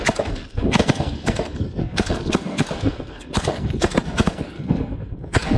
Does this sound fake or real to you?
fake